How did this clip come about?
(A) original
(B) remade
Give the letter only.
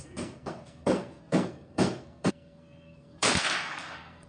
B